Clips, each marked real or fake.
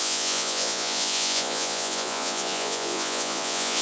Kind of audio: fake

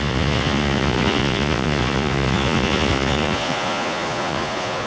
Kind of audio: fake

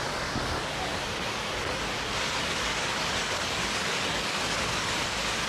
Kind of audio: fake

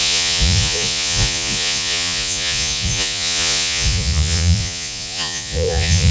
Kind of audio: fake